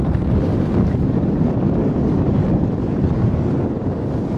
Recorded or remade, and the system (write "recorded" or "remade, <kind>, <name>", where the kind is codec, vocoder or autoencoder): remade, codec, DAC